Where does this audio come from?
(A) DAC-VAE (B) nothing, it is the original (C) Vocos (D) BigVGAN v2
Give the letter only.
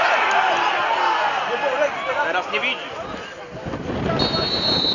B